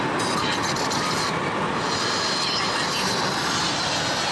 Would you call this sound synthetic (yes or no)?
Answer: no